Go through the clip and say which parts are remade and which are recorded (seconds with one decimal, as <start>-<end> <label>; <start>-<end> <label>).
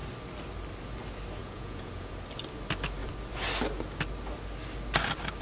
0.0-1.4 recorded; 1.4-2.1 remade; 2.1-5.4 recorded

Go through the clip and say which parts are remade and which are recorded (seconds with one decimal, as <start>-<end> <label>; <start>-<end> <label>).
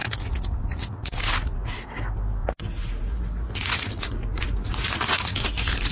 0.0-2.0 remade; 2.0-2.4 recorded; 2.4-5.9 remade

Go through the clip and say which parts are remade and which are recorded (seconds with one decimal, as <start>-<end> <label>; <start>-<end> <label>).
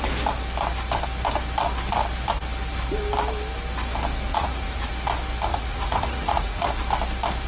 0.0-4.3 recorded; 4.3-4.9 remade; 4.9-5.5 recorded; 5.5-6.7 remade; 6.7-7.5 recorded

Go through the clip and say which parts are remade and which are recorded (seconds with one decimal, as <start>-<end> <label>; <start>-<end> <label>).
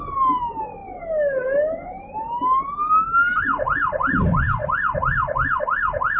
0.0-6.2 recorded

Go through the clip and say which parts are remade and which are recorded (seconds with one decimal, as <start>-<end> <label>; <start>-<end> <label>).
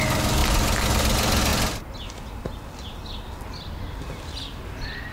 0.0-5.1 recorded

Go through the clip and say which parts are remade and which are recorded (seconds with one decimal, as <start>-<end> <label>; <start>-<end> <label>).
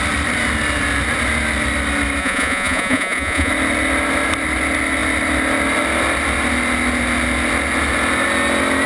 0.0-2.2 recorded; 2.2-3.5 remade; 3.5-8.9 recorded